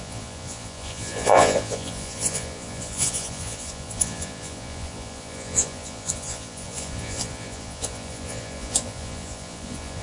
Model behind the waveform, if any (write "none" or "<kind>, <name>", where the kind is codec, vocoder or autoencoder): vocoder, Vocos